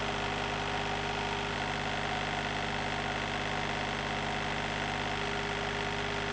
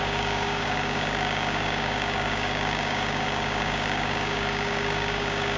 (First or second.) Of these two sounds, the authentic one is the first